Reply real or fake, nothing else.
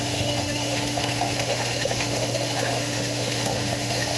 fake